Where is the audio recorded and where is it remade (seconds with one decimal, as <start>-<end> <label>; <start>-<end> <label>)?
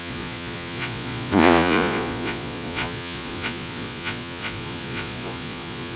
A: 0.0-6.0 remade